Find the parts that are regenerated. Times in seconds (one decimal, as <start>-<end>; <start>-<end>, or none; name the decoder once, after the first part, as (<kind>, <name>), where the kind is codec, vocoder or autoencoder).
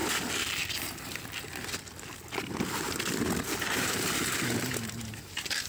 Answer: 3.4-5.7 (vocoder, BigVGAN v2)